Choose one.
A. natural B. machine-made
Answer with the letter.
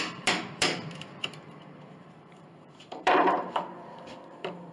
B